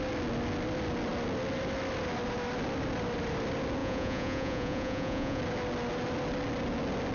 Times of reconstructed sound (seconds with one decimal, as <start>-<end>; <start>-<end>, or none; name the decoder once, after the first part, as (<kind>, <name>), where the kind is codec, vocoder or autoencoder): 3.8-5.4 (vocoder, Vocos)